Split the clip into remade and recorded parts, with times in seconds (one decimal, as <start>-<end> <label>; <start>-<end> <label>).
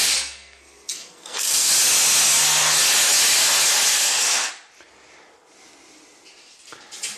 0.0-1.7 remade; 1.7-3.9 recorded; 3.9-4.5 remade; 4.5-7.2 recorded